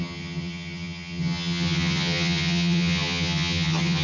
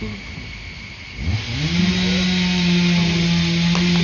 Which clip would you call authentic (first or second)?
second